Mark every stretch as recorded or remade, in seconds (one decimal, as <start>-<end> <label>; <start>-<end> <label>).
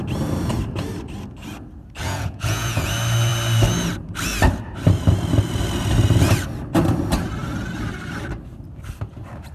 0.0-2.0 recorded; 2.0-2.9 remade; 2.9-9.5 recorded